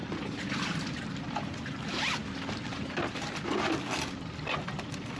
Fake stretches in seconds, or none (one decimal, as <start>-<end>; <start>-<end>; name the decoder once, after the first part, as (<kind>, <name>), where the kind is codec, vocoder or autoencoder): none